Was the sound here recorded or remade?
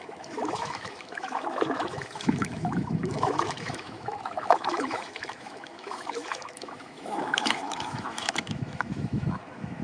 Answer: remade